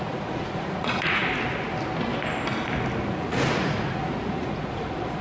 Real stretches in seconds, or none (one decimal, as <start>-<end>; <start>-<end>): 1.2-3.1

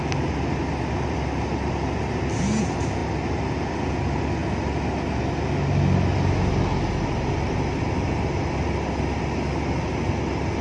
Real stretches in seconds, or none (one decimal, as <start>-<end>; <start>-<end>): 0.0-10.6

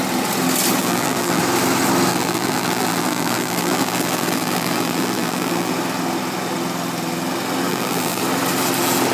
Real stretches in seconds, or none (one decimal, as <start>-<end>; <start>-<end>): 0.0-0.8; 1.4-2.1; 5.7-7.7; 8.2-9.1

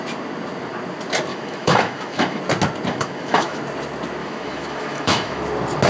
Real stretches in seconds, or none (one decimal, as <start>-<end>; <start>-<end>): 0.0-1.3; 2.4-2.9; 3.6-4.2; 5.4-5.9

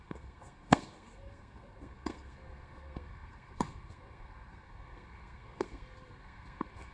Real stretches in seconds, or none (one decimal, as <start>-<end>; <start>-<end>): none